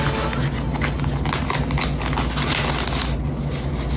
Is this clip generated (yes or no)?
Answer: no